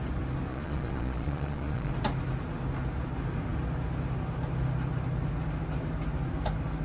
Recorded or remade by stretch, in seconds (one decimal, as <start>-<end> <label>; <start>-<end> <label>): 0.0-0.5 recorded; 0.5-1.9 remade; 1.9-6.8 recorded